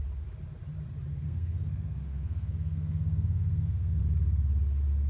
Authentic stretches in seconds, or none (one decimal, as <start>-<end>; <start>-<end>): 0.0-1.1; 4.0-5.1